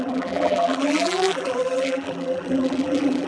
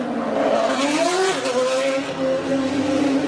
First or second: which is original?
second